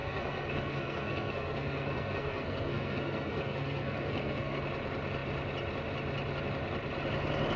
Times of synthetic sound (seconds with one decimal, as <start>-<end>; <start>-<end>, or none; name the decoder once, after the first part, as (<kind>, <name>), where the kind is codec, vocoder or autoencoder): 0.0-4.6 (codec, SNAC)